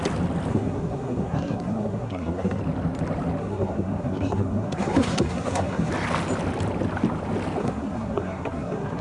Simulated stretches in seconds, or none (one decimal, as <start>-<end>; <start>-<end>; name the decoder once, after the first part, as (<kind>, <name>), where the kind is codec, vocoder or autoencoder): 0.5-2.6 (codec, SNAC); 3.4-5.9; 7.6-9.0